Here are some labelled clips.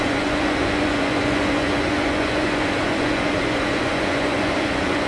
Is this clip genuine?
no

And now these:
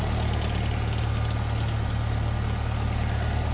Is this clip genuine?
yes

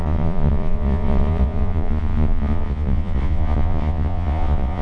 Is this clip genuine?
no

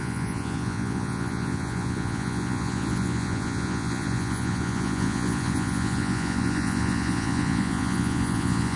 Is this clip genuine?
no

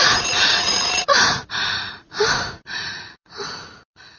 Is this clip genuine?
no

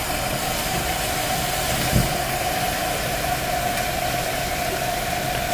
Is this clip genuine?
yes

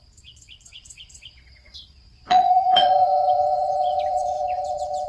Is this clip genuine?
no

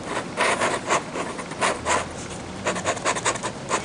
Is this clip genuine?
yes